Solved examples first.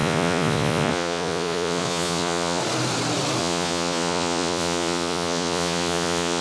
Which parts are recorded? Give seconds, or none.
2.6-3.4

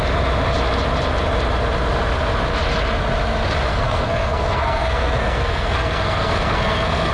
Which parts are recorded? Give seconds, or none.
0.0-3.7

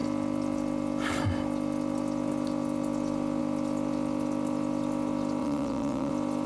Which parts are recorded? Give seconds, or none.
0.0-5.4; 6.1-6.5

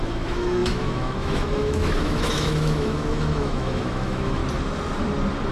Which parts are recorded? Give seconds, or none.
4.4-5.5

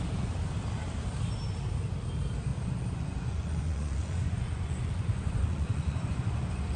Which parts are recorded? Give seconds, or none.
0.0-2.5

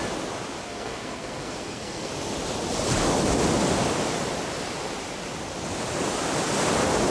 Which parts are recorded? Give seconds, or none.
0.0-0.6; 2.1-7.1

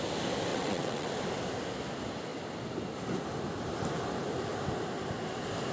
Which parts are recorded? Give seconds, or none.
0.0-0.5; 1.1-5.7